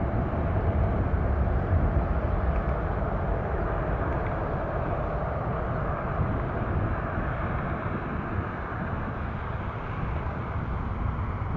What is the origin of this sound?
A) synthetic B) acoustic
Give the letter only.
B